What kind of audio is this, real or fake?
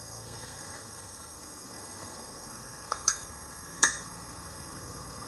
fake